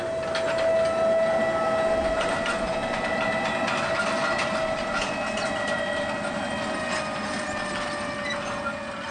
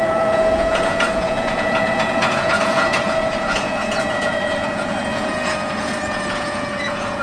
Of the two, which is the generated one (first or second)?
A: second